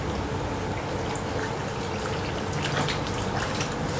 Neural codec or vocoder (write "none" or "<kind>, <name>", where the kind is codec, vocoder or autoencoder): none